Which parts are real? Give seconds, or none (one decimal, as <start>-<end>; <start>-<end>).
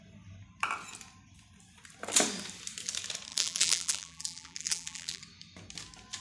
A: 0.0-3.3; 5.2-6.2